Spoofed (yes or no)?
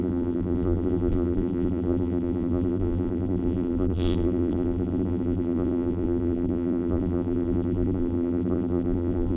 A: yes